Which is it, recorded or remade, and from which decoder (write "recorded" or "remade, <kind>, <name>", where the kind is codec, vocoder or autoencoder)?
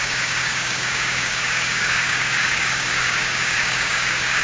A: remade, codec, DAC